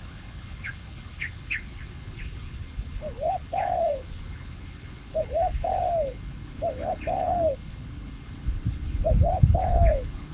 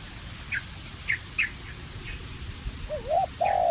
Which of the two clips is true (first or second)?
second